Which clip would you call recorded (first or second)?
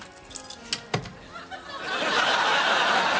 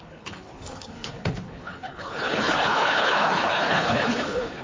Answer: first